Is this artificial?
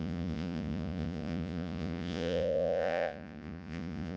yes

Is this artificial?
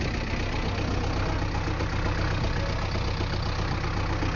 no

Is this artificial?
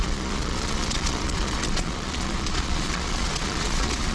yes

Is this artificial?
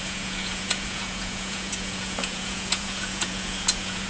yes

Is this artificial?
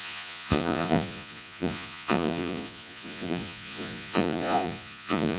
yes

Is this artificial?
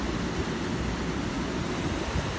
no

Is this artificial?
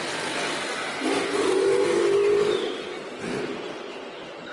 no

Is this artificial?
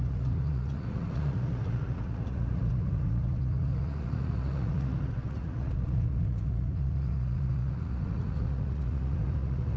yes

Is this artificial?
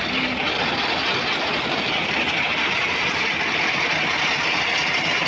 no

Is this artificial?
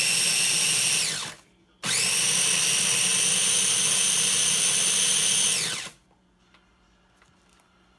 no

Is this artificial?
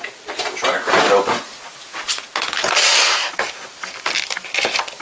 no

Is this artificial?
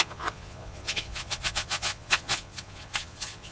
yes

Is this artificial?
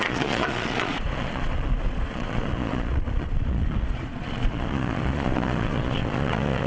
yes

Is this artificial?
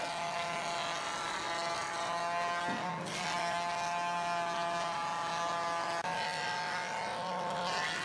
no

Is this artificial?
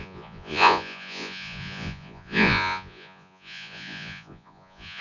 yes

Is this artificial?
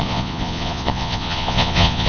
yes